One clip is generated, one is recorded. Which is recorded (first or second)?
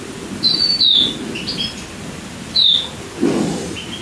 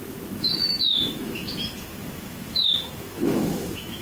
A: first